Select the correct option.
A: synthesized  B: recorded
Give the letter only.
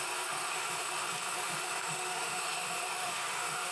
A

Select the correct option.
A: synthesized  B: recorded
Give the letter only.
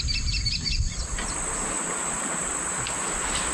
B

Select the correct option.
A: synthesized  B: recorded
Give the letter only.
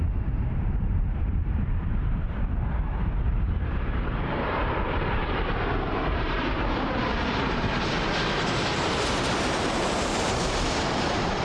A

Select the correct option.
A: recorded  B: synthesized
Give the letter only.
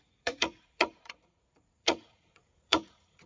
B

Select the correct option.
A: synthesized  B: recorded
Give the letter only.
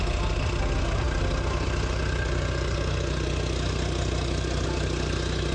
B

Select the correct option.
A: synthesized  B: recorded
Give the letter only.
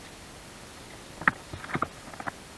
A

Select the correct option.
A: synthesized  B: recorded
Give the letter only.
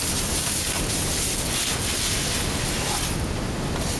B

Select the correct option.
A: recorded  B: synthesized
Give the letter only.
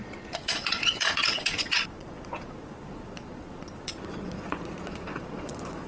B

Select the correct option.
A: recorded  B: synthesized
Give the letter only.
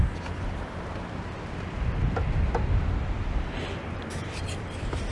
A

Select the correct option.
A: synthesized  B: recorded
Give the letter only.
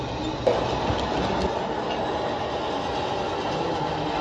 B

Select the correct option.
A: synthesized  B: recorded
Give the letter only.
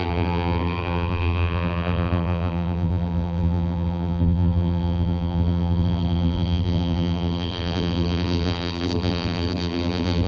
A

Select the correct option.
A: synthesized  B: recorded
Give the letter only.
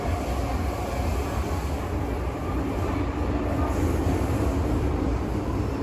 B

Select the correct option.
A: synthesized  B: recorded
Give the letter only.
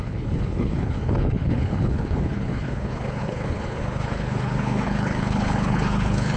A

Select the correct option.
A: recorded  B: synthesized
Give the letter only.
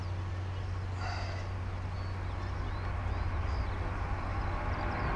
A